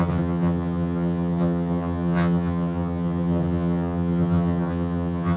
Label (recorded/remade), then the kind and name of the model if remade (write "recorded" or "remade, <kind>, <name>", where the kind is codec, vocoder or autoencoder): remade, vocoder, HiFi-GAN